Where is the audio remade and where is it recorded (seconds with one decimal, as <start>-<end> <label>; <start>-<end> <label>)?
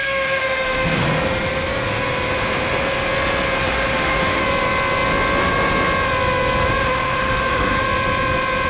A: 0.0-1.0 remade; 1.0-3.6 recorded; 3.6-4.4 remade; 4.4-6.8 recorded; 6.8-7.8 remade; 7.8-8.7 recorded